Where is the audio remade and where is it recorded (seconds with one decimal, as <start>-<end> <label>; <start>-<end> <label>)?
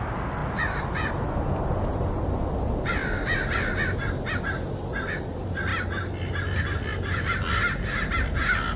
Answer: 0.0-8.8 recorded